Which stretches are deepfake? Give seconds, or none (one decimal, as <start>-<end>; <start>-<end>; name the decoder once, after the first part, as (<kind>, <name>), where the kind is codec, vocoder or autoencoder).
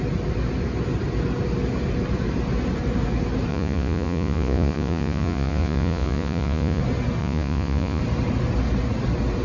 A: 3.5-6.8 (vocoder, Vocos); 7.2-8.0